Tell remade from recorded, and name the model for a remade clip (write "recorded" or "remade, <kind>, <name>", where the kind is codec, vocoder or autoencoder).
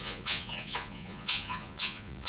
remade, vocoder, Vocos